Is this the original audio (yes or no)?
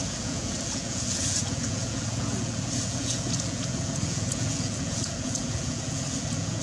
no